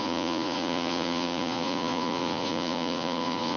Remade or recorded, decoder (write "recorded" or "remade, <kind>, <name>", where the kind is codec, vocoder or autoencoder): remade, vocoder, Vocos